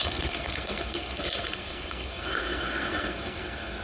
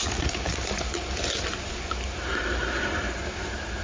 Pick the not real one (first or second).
first